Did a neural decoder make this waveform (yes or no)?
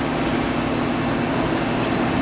no